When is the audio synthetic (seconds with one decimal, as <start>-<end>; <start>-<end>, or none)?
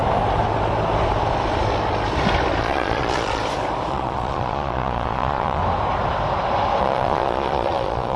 2.6-3.4; 3.9-5.6; 6.8-8.2